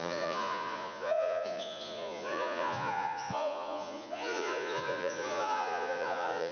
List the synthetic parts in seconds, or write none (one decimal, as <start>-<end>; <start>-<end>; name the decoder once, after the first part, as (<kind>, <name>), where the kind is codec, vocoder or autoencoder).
0.0-6.5 (vocoder, Vocos)